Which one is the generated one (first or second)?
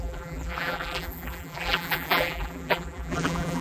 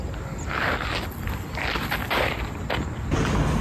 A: first